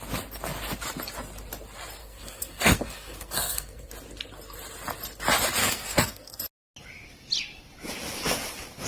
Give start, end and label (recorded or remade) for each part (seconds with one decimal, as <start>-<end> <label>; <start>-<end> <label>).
0.0-2.0 recorded; 2.0-3.9 remade; 3.9-5.6 recorded; 5.6-6.4 remade; 6.4-8.9 recorded